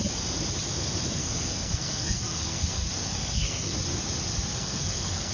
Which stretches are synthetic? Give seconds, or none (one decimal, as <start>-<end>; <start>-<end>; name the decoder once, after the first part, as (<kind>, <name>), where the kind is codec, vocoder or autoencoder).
1.2-3.7 (codec, SNAC); 4.5-5.3

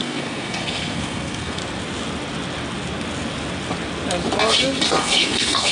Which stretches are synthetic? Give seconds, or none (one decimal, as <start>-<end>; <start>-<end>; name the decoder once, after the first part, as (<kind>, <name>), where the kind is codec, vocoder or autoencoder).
0.0-1.6 (codec, SNAC); 5.0-5.7

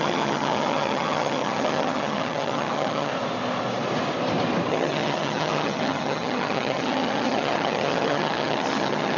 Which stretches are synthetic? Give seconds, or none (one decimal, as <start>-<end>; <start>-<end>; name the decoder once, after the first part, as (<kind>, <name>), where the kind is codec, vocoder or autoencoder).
0.0-3.1 (vocoder, HiFi-GAN); 4.7-9.2

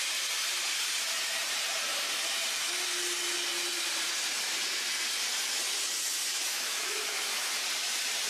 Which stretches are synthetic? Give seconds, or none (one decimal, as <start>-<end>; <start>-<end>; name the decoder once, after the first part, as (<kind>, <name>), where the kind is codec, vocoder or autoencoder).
6.3-7.5 (autoencoder, DAC-VAE)

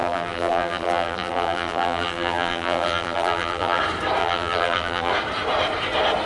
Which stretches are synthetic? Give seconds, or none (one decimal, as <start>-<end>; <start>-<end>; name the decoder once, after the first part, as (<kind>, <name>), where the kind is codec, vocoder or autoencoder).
0.0-3.8 (vocoder, BigVGAN v2); 4.2-5.1

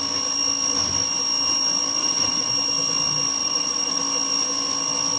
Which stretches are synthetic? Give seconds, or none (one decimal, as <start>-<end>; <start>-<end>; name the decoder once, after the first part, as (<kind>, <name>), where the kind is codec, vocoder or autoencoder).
2.0-2.5 (vocoder, WaveNeXt); 3.4-4.0